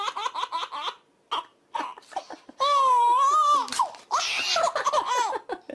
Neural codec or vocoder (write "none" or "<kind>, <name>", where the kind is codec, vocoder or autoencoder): none